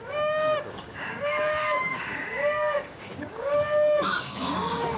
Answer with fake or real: fake